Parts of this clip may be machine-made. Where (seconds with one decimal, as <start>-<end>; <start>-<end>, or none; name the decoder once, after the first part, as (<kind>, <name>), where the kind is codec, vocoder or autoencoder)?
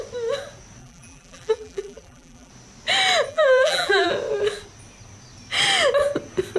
0.8-2.5 (vocoder, BigVGAN v2); 3.3-4.1